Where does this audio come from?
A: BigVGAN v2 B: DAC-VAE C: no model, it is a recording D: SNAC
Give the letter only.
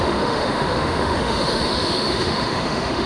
B